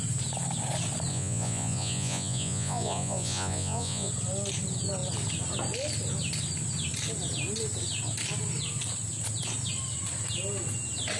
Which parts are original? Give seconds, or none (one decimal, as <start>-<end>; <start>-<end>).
0.0-1.1; 4.1-11.2